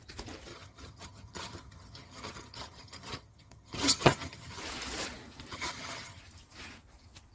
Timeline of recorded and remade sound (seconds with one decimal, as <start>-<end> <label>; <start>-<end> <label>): 0.0-0.5 recorded; 0.5-4.6 remade; 4.6-5.5 recorded; 5.5-6.2 remade; 6.2-7.3 recorded